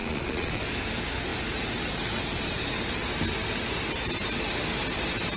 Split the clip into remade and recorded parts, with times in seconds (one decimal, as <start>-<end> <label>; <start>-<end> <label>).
0.0-0.6 remade; 0.6-5.4 recorded